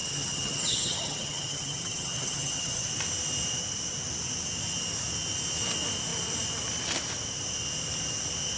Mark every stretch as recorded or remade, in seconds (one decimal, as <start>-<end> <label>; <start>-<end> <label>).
0.0-2.9 remade; 2.9-8.6 recorded